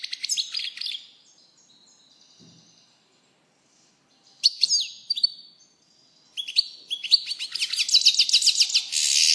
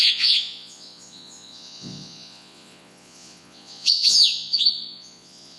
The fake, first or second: second